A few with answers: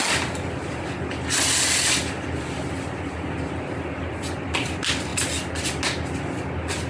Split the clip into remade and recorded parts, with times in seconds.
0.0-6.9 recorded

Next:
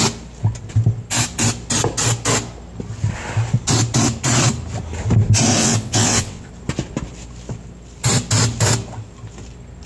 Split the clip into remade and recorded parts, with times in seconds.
0.0-5.6 recorded; 5.6-6.5 remade; 6.5-9.9 recorded